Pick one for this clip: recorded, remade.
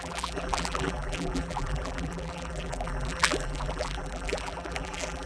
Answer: remade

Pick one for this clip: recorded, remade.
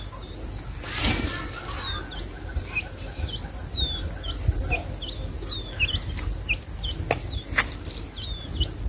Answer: recorded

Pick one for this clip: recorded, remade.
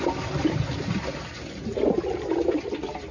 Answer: recorded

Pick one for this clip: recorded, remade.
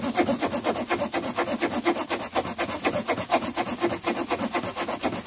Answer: recorded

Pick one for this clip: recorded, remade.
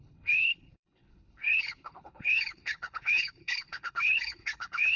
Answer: remade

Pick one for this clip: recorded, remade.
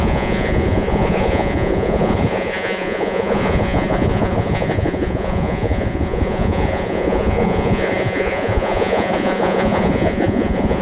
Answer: remade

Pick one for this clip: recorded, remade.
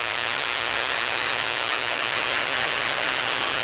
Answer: remade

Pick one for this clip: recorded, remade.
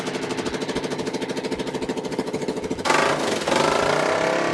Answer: recorded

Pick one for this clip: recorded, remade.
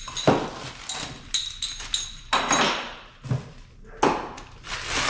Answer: recorded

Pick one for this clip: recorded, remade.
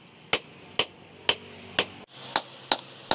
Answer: recorded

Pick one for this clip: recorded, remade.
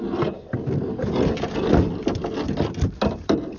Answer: recorded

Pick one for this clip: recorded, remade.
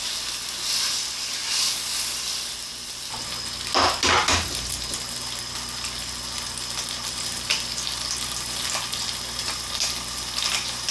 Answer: recorded